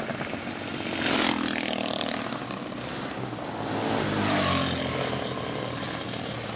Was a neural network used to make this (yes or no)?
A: no